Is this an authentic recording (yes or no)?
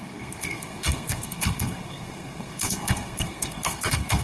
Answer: no